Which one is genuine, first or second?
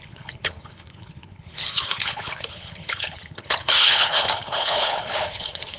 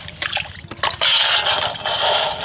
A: second